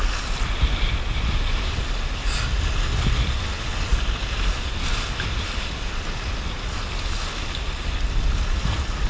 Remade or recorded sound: recorded